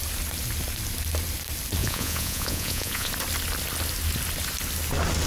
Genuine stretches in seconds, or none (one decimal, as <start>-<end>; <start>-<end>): 0.0-1.8; 3.1-5.3